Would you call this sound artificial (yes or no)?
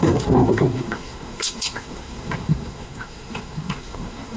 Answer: yes